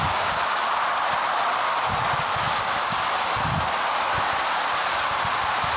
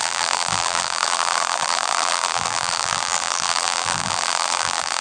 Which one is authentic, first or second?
first